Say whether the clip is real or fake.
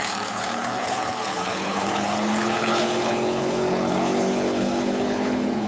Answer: fake